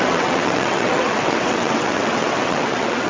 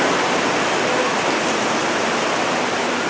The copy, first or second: first